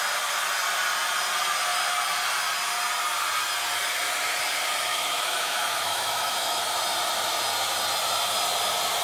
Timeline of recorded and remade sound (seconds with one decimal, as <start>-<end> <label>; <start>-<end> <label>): 0.0-4.9 recorded; 4.9-6.6 remade; 6.6-9.0 recorded